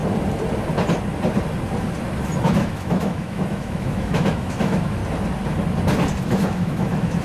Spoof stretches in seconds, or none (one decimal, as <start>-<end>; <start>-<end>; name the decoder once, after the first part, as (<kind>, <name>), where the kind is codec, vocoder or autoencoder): 2.4-5.0 (autoencoder, DAC-VAE); 6.2-7.2

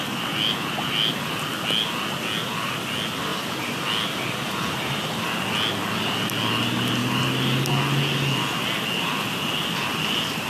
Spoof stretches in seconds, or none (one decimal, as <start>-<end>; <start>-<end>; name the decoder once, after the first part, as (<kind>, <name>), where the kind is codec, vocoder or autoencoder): none

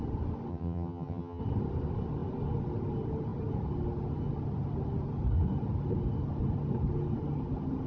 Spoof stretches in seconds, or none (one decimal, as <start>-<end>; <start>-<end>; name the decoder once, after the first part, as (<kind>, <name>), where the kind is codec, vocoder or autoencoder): 0.5-1.4 (vocoder, HiFi-GAN)

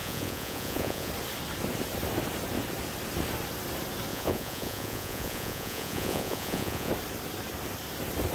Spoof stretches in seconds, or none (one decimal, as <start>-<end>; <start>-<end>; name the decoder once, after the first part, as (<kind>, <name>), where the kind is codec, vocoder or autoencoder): 0.0-1.1 (vocoder, Vocos); 4.1-6.9

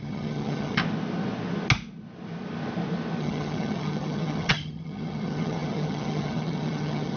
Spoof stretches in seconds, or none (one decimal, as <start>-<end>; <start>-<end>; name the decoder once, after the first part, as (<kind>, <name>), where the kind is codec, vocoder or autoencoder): 0.0-0.8 (vocoder, HiFi-GAN); 3.2-7.2

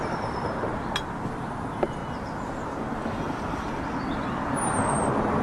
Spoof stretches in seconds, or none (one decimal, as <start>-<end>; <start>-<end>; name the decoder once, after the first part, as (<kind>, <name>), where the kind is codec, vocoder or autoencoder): 0.0-0.7 (vocoder, BigVGAN v2); 1.3-2.0; 4.7-5.4

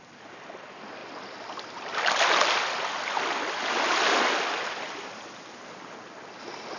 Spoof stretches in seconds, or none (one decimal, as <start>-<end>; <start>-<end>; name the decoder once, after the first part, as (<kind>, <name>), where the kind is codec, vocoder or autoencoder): none

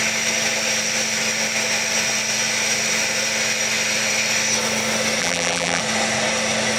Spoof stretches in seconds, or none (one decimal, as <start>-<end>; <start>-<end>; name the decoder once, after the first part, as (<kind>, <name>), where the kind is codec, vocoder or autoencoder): 5.2-5.8 (vocoder, BigVGAN v2)